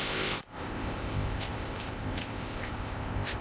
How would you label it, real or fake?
fake